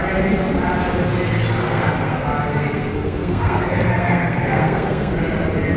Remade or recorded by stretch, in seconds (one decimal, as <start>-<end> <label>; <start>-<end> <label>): 0.0-1.6 recorded; 1.6-5.1 remade; 5.1-5.8 recorded